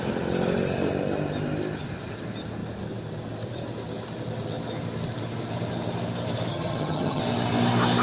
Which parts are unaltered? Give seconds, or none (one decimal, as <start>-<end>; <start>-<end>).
0.0-6.5; 7.2-8.0